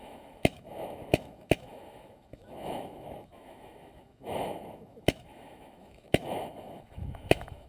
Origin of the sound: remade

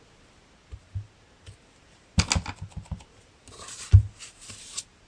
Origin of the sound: recorded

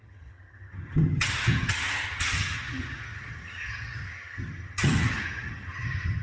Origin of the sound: remade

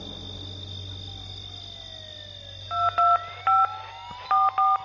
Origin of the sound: recorded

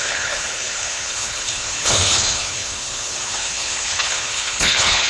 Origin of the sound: remade